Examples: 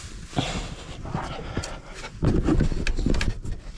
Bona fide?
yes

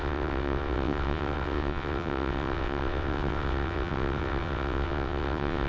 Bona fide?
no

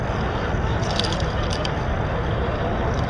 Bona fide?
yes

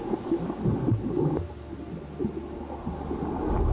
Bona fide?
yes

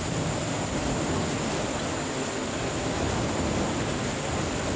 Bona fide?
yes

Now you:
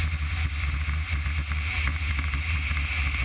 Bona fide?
yes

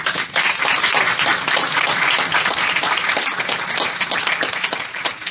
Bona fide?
yes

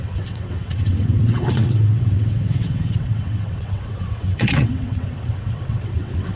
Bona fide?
no